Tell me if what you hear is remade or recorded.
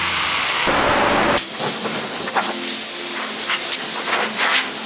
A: recorded